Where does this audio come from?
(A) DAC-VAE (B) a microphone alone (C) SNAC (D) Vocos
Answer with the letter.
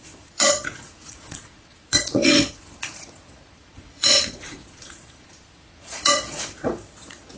D